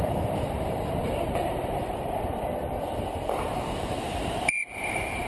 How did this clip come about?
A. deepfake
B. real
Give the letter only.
A